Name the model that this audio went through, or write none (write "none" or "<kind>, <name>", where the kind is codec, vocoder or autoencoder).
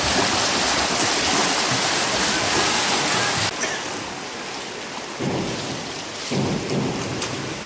none